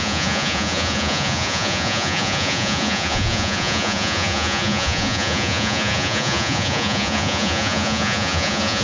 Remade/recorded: remade